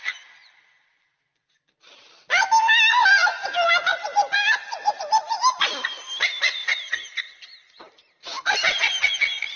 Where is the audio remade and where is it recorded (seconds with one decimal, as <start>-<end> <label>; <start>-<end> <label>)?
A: 0.0-9.6 recorded